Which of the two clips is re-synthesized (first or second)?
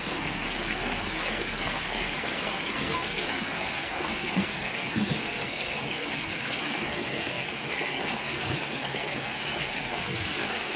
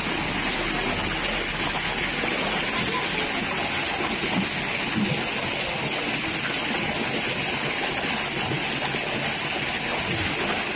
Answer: first